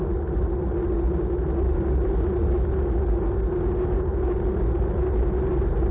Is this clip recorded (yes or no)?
yes